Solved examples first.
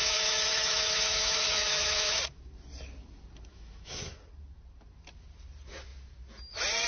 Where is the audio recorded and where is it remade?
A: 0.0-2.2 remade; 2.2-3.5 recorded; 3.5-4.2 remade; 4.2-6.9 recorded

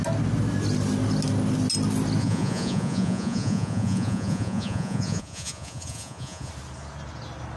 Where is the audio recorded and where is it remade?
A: 0.0-2.2 recorded; 2.2-6.5 remade; 6.5-7.6 recorded